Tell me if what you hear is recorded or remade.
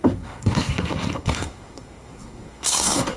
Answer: remade